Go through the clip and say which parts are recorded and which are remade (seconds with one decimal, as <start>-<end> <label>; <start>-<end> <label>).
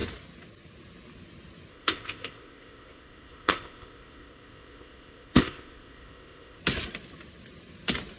0.0-1.7 recorded; 1.7-6.6 remade; 6.6-8.2 recorded